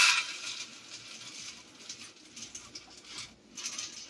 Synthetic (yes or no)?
no